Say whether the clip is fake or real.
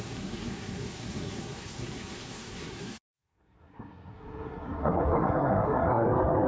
fake